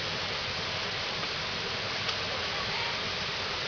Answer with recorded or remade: recorded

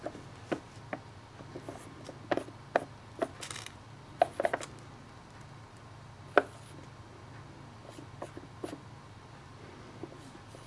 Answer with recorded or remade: recorded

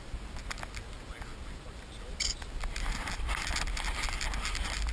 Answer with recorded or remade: recorded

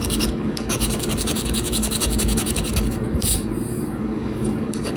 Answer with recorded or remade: remade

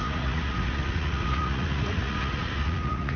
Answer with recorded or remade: remade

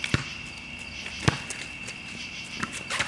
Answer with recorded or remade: recorded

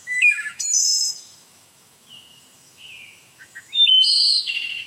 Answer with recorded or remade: remade